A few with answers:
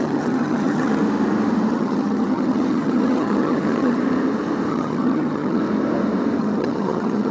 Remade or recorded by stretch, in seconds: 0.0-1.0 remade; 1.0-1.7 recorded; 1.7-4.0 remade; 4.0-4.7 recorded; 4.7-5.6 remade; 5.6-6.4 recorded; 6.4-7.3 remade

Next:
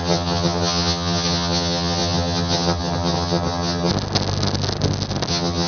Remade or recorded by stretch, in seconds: 0.0-3.9 remade; 3.9-5.3 recorded; 5.3-5.7 remade